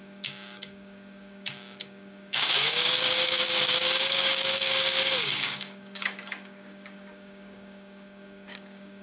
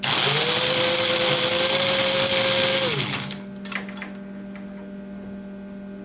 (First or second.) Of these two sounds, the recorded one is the second